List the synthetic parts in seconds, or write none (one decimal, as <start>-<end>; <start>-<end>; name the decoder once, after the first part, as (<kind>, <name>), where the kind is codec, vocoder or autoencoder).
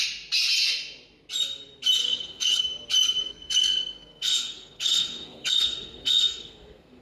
2.0-2.6 (codec, SNAC); 3.2-7.0